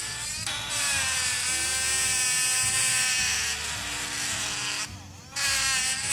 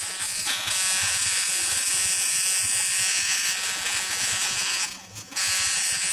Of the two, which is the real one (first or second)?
first